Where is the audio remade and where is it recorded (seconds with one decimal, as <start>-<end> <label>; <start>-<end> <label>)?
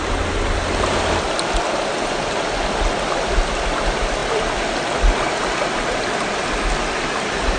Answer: 0.0-7.6 recorded